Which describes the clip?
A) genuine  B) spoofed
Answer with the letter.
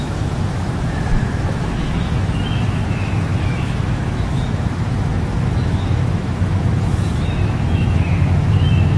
B